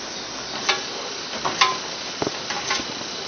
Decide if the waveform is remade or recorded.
recorded